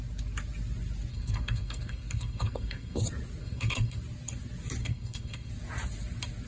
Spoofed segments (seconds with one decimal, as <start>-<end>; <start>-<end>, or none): 1.1-3.0; 3.4-4.0; 4.8-5.5